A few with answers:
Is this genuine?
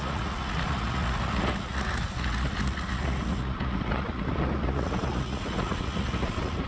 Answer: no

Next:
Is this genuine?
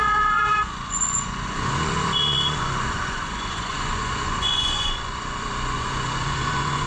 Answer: no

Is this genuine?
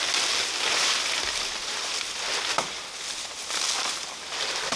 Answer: yes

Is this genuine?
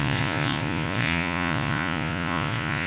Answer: no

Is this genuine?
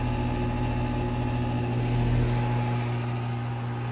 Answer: yes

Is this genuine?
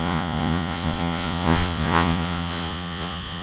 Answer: no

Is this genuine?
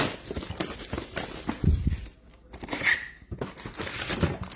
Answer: yes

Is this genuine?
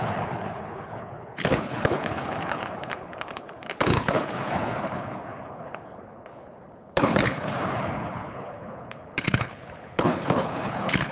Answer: no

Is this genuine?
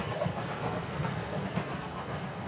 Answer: no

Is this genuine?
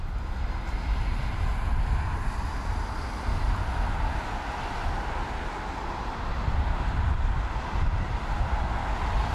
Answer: yes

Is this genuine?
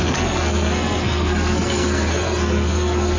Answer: no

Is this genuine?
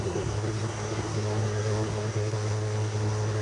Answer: no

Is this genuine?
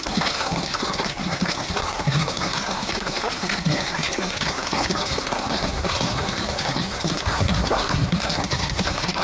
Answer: no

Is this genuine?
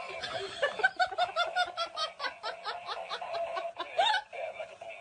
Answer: yes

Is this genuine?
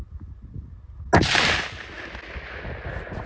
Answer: yes